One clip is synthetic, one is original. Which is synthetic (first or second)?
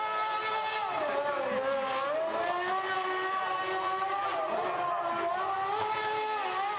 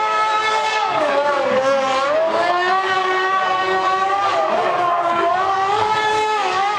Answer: second